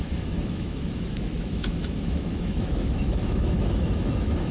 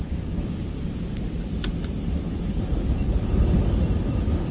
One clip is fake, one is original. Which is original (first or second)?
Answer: second